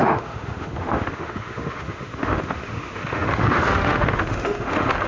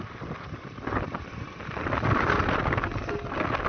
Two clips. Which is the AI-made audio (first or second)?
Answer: first